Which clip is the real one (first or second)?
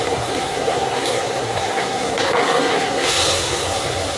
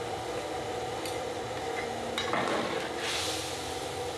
second